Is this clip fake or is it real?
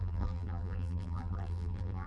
fake